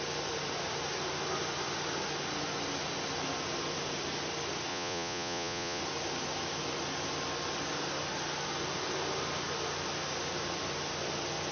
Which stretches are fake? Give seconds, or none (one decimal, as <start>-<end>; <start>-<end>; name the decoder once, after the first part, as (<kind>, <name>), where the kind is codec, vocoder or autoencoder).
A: 4.7-5.8 (vocoder, Vocos)